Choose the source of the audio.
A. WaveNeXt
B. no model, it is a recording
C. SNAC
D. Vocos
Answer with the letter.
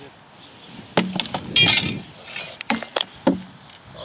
B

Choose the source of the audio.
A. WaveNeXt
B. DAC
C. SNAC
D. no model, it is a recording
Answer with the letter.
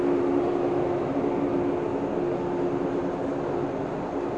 D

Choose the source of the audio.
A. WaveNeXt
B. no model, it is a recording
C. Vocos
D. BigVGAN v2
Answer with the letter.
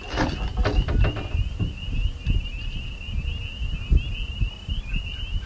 B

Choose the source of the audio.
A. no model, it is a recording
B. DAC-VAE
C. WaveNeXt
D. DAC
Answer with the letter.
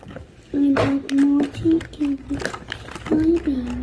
A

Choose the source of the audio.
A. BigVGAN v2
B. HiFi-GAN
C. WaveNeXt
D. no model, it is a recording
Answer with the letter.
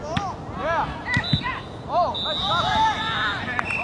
D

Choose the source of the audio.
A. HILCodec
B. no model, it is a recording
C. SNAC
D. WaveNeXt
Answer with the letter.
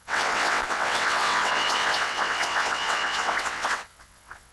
D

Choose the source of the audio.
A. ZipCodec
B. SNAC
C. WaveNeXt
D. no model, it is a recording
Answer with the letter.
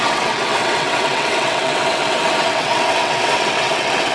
C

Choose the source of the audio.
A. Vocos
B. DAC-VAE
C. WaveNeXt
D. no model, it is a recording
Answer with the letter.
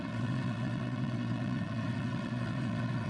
C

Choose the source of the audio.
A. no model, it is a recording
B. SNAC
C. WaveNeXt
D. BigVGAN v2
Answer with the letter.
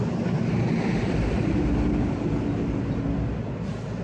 A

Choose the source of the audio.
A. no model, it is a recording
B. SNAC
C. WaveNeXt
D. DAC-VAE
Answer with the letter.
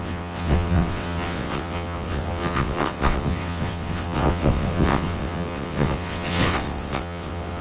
C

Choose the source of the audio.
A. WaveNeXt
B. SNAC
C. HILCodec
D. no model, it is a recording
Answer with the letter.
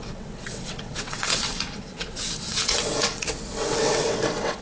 A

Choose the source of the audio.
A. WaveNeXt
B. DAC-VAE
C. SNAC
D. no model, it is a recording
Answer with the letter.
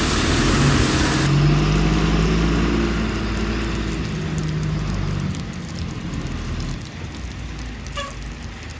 D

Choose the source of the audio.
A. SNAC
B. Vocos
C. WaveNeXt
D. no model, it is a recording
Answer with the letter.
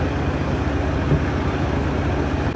D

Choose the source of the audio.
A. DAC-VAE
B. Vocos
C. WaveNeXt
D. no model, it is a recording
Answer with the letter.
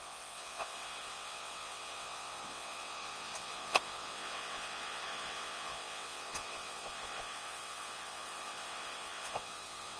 C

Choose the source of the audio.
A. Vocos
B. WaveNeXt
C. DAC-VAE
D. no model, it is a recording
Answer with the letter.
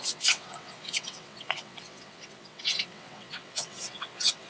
B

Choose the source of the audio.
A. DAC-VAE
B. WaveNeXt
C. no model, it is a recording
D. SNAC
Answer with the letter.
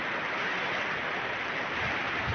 C